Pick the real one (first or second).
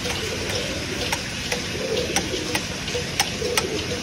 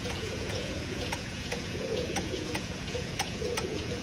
first